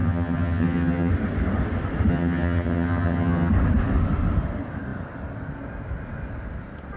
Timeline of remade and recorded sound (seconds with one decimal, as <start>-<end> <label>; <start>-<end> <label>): 0.0-1.1 remade; 1.1-2.1 recorded; 2.1-3.5 remade; 3.5-7.0 recorded